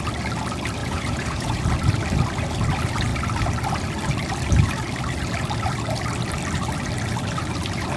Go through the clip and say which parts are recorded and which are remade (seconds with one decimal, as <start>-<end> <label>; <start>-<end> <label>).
0.0-0.8 recorded; 0.8-1.6 remade; 1.6-8.0 recorded